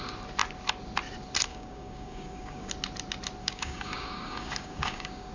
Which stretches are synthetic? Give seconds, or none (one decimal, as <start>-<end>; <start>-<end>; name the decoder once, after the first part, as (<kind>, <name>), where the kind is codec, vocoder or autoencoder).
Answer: 1.5-2.7 (codec, DAC); 3.4-5.3